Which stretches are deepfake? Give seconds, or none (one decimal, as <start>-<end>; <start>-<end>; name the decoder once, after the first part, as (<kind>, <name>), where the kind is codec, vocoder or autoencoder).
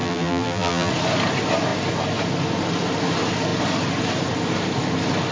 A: 0.0-0.9 (vocoder, BigVGAN v2)